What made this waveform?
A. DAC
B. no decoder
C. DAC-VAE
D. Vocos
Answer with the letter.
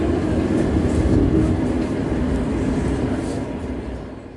B